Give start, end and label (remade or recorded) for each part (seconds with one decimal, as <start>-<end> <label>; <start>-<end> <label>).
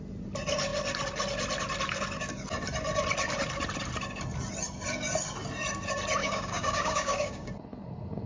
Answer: 0.0-6.2 recorded; 6.2-7.5 remade; 7.5-8.3 recorded